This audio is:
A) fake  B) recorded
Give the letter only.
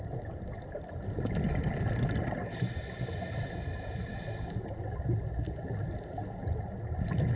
B